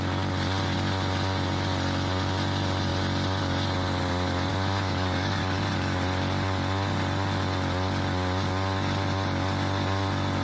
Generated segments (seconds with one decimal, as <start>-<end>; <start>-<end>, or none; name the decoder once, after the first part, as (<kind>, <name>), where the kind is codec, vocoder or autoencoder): 4.5-5.4 (autoencoder, DAC-VAE)